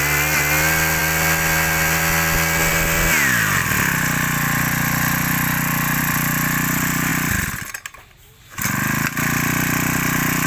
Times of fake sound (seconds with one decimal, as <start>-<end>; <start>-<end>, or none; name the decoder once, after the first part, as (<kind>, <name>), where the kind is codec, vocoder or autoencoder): none